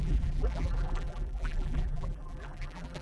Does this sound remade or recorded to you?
remade